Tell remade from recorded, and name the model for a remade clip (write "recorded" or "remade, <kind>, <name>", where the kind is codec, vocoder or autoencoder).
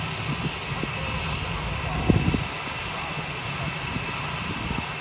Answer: recorded